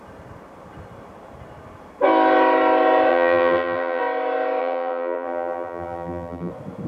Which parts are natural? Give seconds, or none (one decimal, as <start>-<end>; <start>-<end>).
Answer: 0.0-3.1; 4.0-4.6; 6.5-6.9

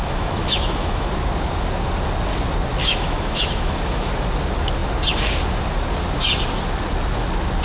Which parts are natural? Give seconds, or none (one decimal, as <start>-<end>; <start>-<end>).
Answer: 1.1-2.8; 4.1-7.6